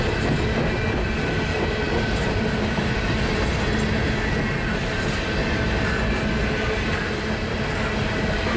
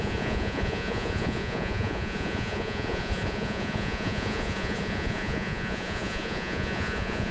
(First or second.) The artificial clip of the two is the second